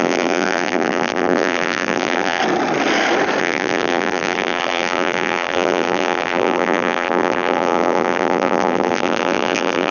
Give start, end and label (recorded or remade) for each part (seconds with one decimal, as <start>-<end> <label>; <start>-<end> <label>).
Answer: 0.0-2.4 remade; 2.4-3.4 recorded; 3.4-9.9 remade